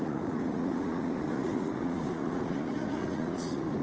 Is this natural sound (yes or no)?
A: no